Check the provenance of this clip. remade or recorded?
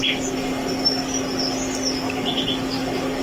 recorded